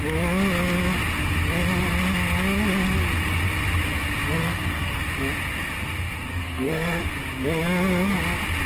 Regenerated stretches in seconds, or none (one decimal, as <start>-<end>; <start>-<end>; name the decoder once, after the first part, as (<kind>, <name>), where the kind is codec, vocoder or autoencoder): 4.4-5.0 (codec, SNAC); 6.3-7.0